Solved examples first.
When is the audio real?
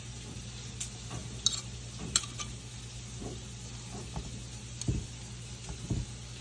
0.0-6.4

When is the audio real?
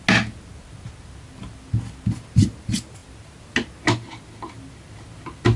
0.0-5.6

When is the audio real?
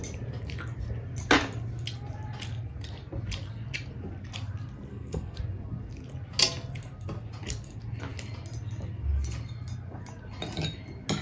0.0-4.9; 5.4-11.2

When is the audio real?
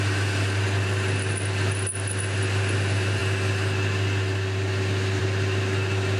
0.0-6.2